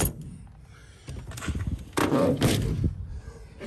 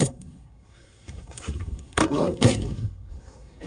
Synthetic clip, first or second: second